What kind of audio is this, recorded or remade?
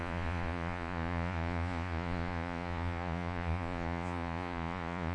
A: remade